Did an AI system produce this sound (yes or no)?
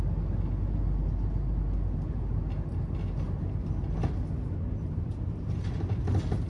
no